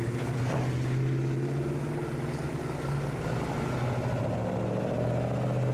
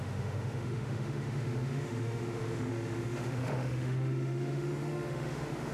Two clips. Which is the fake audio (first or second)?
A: second